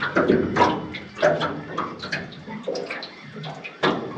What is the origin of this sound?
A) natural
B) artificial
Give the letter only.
A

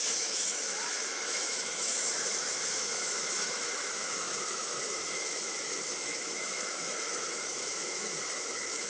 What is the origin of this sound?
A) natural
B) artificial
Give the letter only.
B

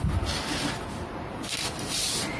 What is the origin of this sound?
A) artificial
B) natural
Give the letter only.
B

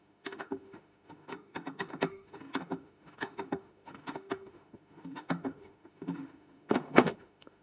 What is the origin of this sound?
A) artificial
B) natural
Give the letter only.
A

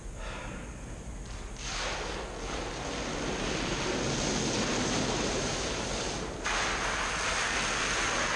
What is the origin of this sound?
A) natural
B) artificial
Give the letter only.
A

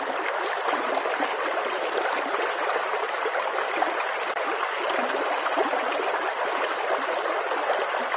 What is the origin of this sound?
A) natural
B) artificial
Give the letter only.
A